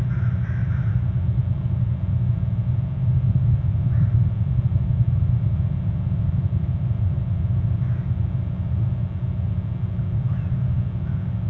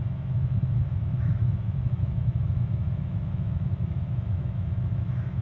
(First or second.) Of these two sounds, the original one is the first